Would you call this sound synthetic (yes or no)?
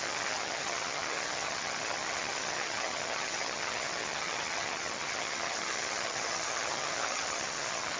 yes